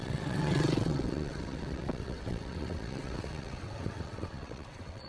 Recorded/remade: remade